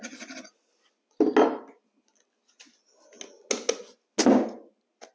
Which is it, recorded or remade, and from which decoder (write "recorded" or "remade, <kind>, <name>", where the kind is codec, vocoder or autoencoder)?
recorded